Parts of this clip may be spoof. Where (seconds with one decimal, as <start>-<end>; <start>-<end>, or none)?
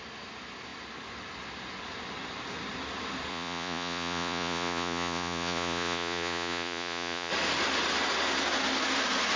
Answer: 3.3-7.3